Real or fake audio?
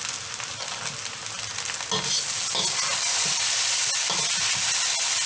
real